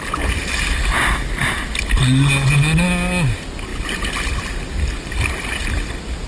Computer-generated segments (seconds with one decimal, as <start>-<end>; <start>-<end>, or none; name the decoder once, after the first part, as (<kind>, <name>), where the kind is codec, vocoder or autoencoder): none